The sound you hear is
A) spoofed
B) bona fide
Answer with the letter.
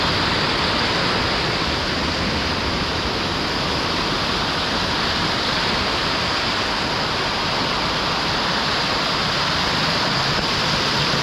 B